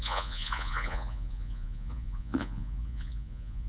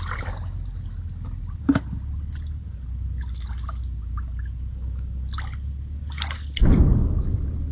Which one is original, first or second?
second